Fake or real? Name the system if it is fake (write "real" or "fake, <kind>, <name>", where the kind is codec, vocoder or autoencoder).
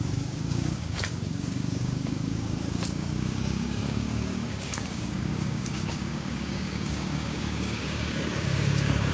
fake, codec, DAC